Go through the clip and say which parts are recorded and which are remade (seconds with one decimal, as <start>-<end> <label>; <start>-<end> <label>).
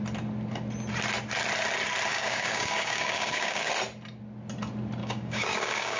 0.0-2.1 recorded; 2.1-3.7 remade; 3.7-5.0 recorded; 5.0-6.0 remade